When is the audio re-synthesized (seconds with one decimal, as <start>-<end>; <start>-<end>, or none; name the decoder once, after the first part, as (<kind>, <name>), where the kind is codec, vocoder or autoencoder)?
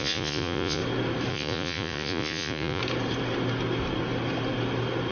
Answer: 0.0-0.8 (vocoder, Vocos); 1.3-2.8